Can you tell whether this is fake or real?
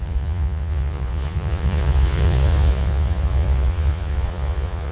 fake